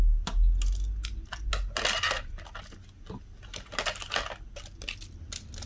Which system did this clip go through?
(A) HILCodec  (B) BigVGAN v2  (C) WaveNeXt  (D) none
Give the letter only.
D